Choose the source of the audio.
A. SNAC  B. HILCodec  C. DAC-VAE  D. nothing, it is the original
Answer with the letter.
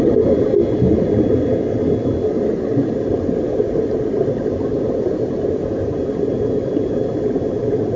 D